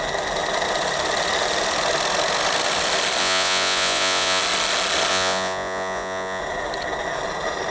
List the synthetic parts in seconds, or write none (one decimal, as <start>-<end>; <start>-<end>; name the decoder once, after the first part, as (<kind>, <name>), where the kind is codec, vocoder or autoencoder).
3.2-4.4 (vocoder, Vocos); 5.1-6.4